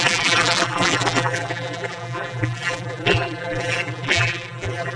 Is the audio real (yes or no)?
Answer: no